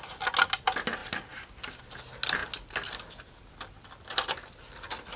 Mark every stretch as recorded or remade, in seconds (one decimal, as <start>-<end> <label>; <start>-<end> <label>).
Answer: 0.0-5.2 recorded